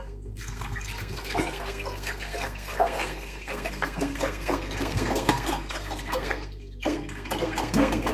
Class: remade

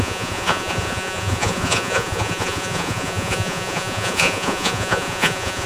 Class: remade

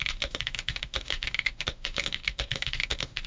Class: remade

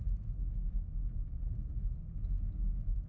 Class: recorded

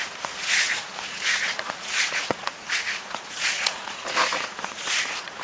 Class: remade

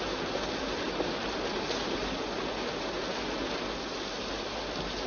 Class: recorded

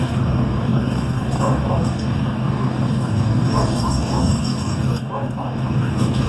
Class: remade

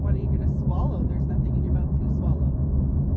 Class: remade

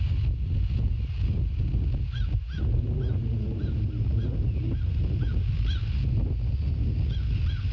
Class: recorded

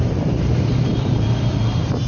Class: remade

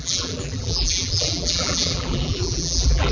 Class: remade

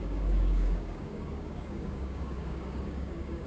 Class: remade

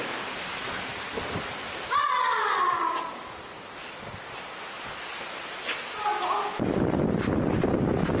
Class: recorded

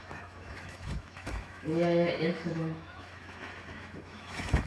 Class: remade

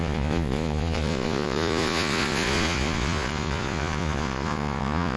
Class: remade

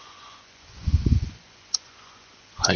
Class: remade